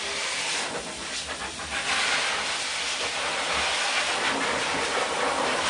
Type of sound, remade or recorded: recorded